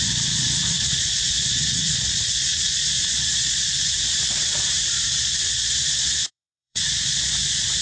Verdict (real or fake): fake